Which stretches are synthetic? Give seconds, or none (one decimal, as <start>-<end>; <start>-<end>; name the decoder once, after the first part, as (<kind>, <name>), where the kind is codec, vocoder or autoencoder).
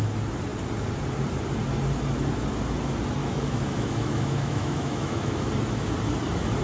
3.2-5.5 (autoencoder, DAC-VAE)